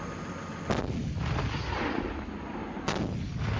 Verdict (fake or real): real